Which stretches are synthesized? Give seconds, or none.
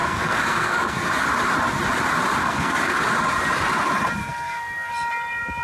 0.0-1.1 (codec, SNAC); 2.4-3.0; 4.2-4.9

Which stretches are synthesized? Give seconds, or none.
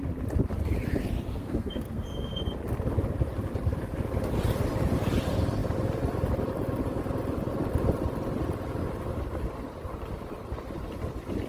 1.3-2.4 (codec, SNAC)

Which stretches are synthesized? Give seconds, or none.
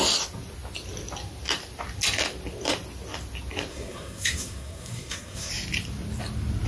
3.7-5.5 (codec, SNAC)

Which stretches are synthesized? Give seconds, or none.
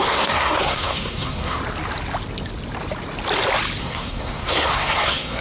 0.0-1.6 (codec, SNAC); 3.8-5.4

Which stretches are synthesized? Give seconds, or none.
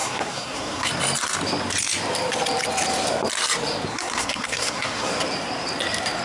0.0-0.9 (codec, SNAC); 3.9-5.1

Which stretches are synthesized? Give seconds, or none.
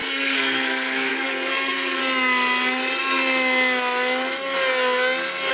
0.0-2.0 (codec, SNAC)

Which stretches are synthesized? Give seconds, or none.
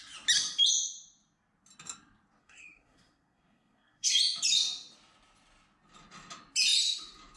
2.4-4.1 (codec, SNAC)